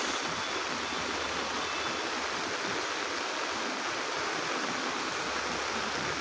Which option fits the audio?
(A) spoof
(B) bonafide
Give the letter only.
B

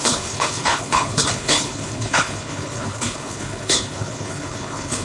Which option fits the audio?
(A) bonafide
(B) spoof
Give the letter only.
B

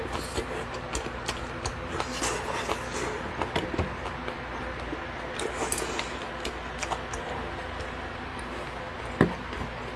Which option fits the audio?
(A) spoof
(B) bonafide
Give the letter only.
B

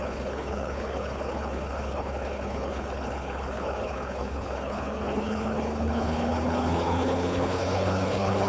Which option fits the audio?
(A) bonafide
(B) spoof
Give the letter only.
B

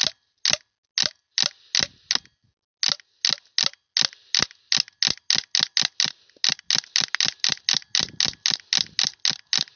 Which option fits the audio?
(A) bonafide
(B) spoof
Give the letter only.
A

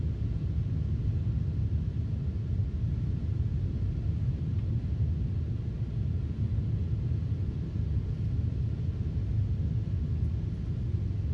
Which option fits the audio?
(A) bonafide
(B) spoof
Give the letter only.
A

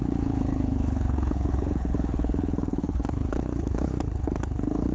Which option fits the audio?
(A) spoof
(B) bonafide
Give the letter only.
A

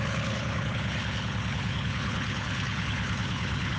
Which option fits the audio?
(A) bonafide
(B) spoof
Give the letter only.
B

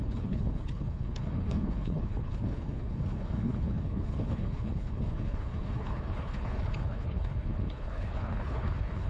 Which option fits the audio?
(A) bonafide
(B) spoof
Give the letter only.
B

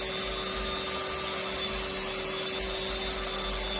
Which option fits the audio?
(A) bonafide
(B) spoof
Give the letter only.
A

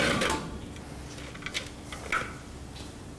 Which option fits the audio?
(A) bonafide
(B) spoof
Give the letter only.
A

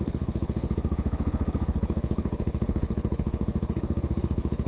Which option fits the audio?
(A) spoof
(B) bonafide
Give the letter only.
A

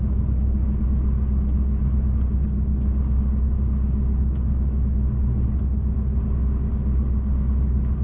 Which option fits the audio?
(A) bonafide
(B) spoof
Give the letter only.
A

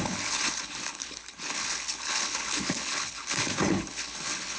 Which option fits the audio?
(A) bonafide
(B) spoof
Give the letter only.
B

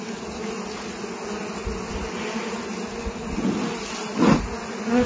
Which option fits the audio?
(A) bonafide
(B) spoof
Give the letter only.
A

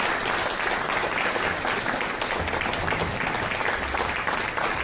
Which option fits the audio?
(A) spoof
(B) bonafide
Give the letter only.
B